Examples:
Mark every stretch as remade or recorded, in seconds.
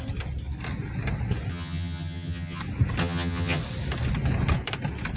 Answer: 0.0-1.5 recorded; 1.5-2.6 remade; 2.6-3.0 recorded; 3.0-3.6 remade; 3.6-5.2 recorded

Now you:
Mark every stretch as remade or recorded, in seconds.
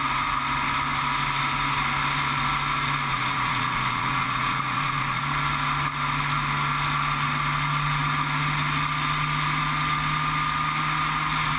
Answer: 0.0-3.1 recorded; 3.1-5.2 remade; 5.2-11.6 recorded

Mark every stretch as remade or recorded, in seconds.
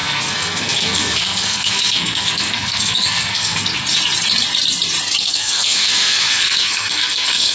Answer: 0.0-3.7 remade; 3.7-5.2 recorded; 5.2-7.5 remade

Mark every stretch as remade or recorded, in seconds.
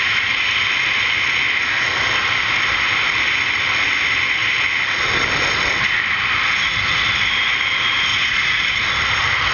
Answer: 0.0-8.1 recorded; 8.1-8.8 remade; 8.8-9.5 recorded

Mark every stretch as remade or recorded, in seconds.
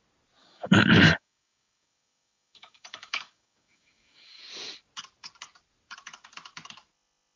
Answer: 0.0-0.4 recorded; 0.4-4.4 remade; 4.4-7.4 recorded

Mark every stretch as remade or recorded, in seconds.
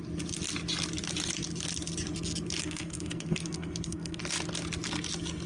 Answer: 0.0-2.6 recorded; 2.6-4.2 remade; 4.2-5.5 recorded